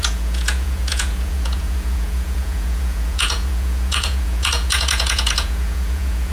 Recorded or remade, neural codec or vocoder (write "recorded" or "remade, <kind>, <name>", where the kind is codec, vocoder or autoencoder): remade, vocoder, Vocos